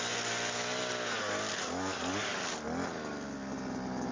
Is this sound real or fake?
real